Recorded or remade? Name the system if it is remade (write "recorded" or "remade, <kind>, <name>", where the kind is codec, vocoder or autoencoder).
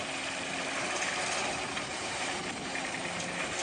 recorded